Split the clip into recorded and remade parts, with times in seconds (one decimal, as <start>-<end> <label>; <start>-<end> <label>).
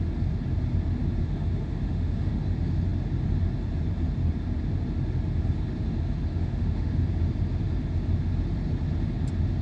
0.0-1.2 recorded; 1.2-2.3 remade; 2.3-6.3 recorded; 6.3-6.9 remade; 6.9-9.6 recorded